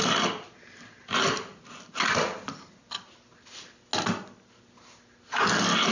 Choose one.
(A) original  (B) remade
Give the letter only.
A